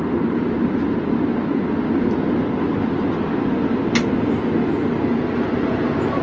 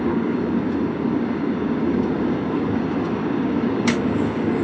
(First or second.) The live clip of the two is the first